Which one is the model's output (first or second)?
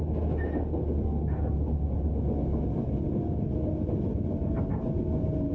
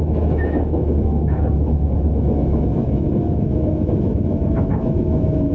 second